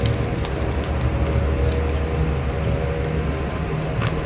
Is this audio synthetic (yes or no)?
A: no